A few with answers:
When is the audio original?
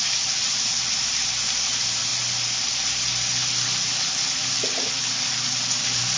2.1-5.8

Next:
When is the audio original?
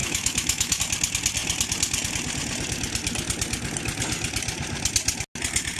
0.8-5.8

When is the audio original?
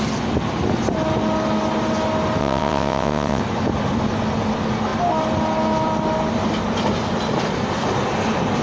0.0-2.4; 3.4-8.6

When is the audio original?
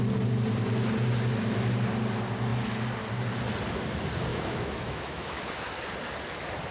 0.0-4.3; 5.7-6.7